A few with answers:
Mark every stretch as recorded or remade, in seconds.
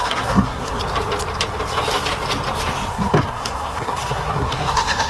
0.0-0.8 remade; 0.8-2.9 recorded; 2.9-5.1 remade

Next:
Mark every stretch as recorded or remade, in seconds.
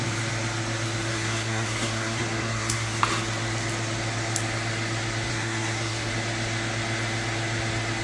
0.0-1.1 recorded; 1.1-3.0 remade; 3.0-5.3 recorded; 5.3-6.1 remade; 6.1-8.0 recorded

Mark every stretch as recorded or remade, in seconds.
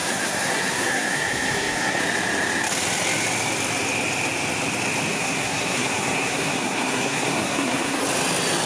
0.0-2.0 remade; 2.0-5.1 recorded; 5.1-8.0 remade; 8.0-8.7 recorded